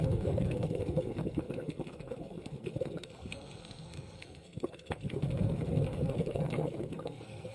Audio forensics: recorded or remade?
remade